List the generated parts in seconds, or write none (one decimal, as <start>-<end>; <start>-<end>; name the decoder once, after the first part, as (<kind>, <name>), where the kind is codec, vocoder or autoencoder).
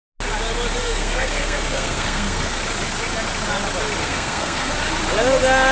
0.8-2.6 (codec, SNAC); 4.0-4.7